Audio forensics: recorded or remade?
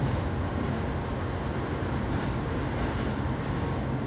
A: recorded